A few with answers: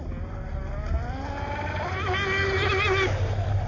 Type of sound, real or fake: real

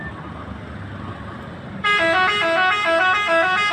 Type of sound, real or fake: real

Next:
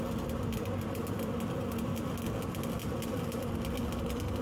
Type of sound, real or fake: real